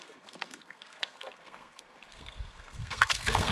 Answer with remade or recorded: remade